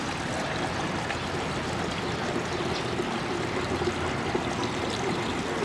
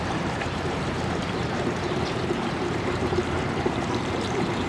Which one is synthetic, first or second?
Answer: second